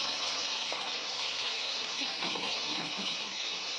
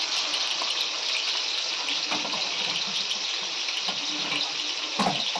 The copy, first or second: first